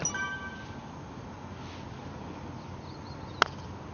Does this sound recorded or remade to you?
recorded